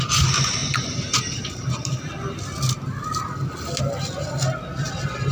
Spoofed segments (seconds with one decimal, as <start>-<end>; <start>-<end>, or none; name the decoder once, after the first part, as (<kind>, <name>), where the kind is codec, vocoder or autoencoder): none